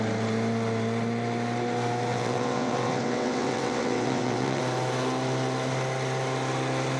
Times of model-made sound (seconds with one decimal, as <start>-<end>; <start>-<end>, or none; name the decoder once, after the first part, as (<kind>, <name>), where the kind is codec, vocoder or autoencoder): 2.1-4.6 (vocoder, WaveNeXt)